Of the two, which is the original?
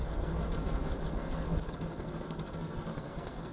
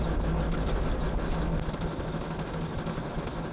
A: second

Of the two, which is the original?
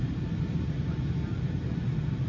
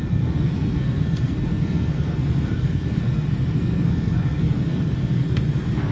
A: first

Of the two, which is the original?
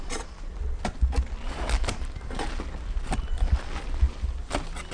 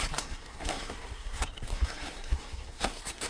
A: first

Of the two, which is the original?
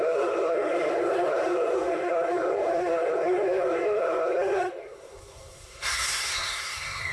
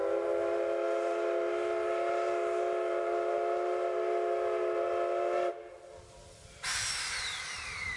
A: second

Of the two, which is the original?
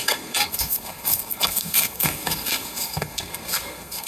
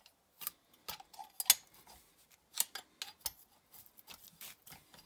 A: second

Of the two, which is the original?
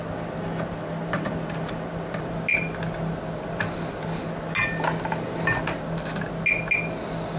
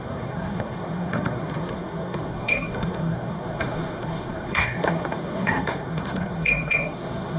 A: first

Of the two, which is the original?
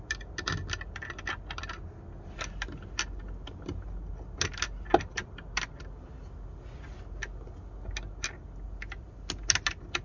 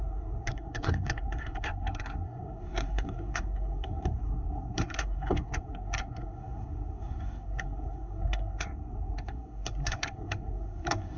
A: first